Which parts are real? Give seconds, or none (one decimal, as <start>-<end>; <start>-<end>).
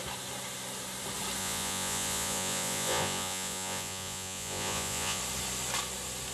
0.0-1.4; 5.2-6.3